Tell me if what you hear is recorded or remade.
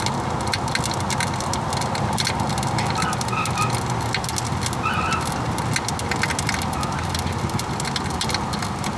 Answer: recorded